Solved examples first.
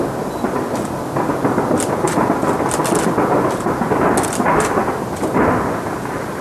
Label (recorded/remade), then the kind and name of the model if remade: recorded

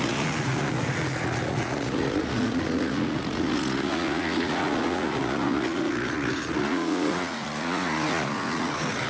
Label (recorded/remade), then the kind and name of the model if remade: remade, vocoder, Vocos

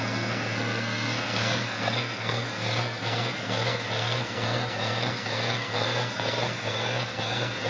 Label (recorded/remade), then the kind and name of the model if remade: remade, codec, SNAC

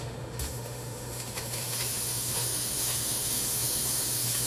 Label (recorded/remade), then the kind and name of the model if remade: remade, autoencoder, DAC-VAE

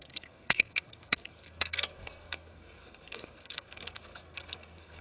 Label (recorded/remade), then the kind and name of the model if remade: remade, codec, SNAC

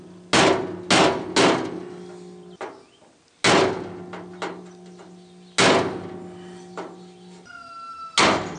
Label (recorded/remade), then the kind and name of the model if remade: recorded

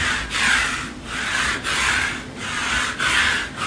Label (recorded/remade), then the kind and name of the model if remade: recorded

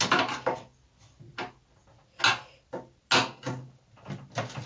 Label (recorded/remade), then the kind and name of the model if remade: recorded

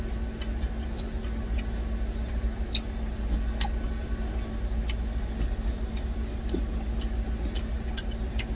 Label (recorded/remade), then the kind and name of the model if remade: recorded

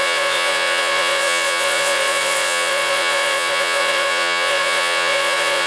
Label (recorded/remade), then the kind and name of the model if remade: remade, vocoder, Vocos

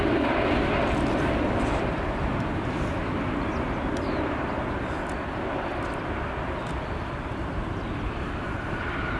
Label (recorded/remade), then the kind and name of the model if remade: recorded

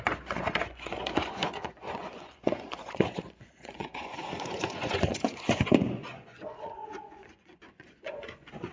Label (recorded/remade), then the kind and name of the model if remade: remade, vocoder, Vocos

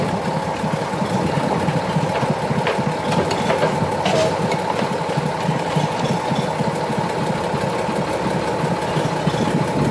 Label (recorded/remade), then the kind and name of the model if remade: recorded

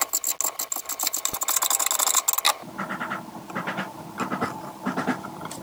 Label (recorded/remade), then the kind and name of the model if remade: recorded